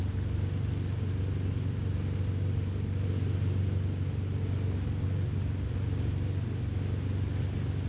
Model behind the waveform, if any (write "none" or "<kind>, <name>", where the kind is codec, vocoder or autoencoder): none